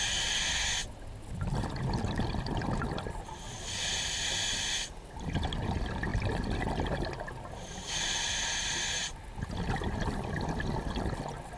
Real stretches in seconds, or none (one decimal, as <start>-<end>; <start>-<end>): 0.0-11.6